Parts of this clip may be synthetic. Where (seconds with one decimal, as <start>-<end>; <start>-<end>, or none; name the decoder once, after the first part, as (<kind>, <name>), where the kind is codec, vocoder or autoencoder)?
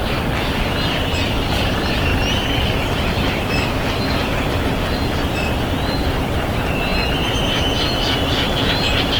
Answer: none